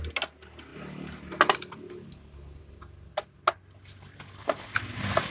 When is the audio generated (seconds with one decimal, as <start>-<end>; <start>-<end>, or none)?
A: none